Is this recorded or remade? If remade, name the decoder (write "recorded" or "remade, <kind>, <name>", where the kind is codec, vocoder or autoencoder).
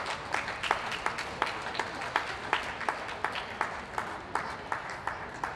recorded